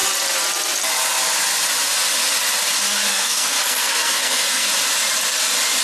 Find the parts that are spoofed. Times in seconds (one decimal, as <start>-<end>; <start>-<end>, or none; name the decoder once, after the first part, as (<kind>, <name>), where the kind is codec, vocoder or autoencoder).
3.1-4.7 (codec, SNAC)